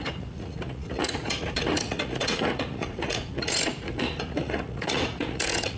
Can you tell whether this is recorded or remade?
remade